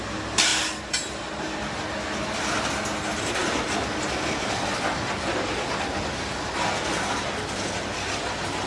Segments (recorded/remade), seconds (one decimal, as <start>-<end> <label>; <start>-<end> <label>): 0.0-8.7 recorded